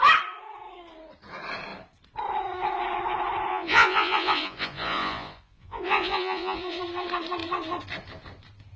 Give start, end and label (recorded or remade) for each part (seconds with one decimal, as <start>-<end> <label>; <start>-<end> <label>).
0.0-3.5 recorded; 3.5-6.8 remade; 6.8-8.8 recorded